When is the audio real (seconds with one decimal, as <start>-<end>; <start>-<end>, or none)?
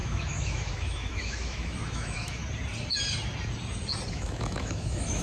2.4-4.1